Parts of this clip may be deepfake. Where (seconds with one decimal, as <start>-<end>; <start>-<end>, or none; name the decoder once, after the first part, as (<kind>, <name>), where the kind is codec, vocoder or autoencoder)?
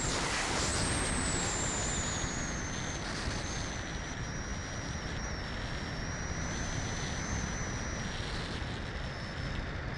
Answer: none